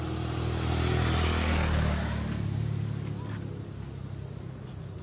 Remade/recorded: recorded